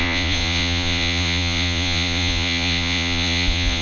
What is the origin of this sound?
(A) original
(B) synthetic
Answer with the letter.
B